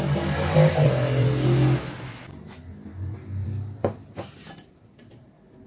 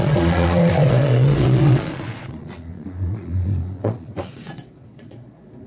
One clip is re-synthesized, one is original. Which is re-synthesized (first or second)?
second